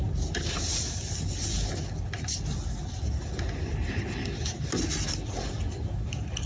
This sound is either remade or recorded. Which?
recorded